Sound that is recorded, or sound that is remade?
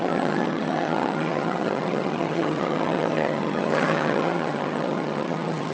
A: remade